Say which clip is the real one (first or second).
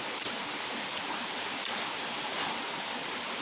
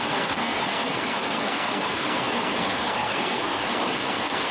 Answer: first